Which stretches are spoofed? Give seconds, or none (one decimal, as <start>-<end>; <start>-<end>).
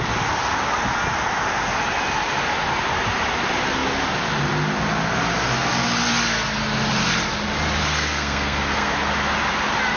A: 7.8-8.9